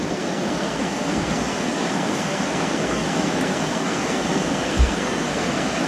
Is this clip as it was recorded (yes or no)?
no